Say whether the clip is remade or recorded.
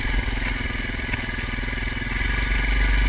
recorded